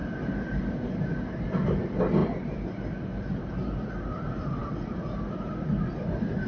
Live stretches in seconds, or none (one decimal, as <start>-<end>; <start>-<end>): 0.0-6.5